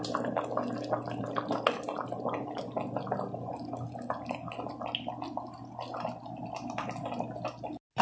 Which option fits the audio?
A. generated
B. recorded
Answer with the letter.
B